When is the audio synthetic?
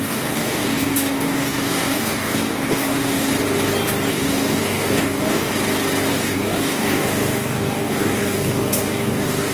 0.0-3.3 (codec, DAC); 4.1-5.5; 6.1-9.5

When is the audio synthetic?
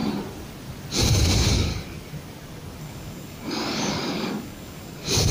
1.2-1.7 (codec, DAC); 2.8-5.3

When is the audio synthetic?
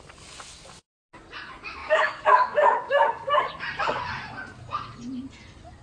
1.8-3.4 (codec, DAC)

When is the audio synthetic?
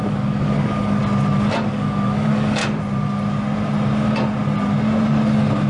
0.0-1.0 (codec, DAC); 1.7-2.6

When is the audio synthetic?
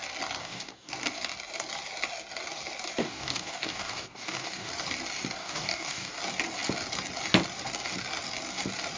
0.4-0.9 (codec, DAC); 3.0-4.7; 5.4-6.1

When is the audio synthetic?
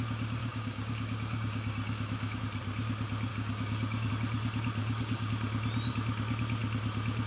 0.4-2.4 (codec, DAC); 3.3-4.1; 4.8-5.3